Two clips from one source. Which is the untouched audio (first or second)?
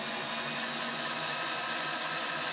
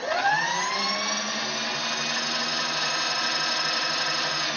second